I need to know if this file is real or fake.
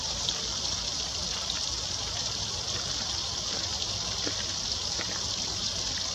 real